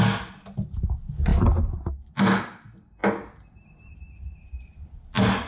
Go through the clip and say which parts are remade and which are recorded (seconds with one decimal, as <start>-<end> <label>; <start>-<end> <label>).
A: 0.0-5.5 recorded